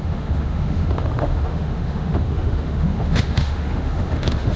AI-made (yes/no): yes